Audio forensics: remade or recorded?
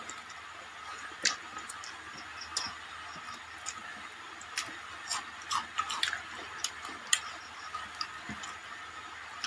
recorded